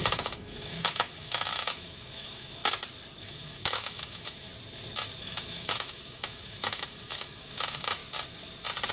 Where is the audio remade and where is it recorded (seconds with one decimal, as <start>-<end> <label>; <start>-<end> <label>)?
0.0-2.6 remade; 2.6-3.2 recorded; 3.2-4.5 remade; 4.5-5.2 recorded; 5.2-8.0 remade; 8.0-8.9 recorded